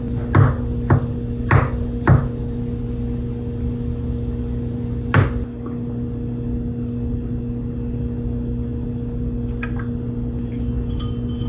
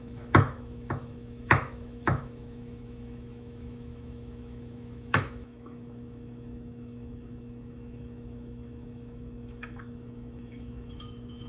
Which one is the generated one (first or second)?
second